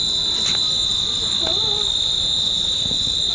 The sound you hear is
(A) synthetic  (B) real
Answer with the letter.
B